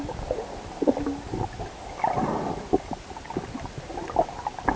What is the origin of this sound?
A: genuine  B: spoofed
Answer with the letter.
A